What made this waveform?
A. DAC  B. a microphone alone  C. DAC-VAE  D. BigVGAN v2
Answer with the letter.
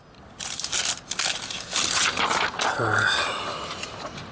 B